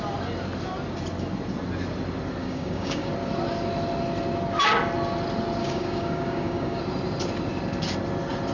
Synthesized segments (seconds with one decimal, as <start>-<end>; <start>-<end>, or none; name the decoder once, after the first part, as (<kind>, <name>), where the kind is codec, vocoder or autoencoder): 2.4-3.1 (codec, DAC); 5.6-6.8